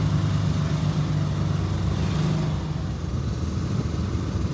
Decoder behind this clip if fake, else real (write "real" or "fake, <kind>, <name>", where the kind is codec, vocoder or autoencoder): real